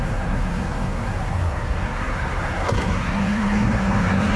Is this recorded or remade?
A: remade